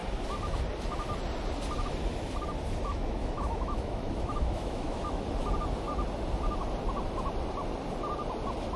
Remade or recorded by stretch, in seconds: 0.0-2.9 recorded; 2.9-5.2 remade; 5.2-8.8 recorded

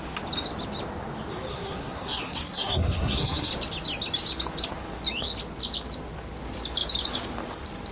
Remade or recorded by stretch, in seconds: 0.0-1.5 recorded; 1.5-3.5 remade; 3.5-7.9 recorded

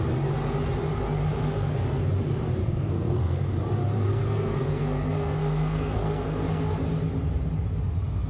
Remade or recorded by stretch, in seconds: 0.0-2.6 recorded; 2.6-3.6 remade; 3.6-4.1 recorded; 4.1-6.6 remade; 6.6-8.3 recorded